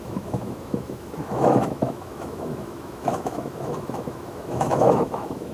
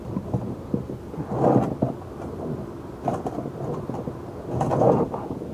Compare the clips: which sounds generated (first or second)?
first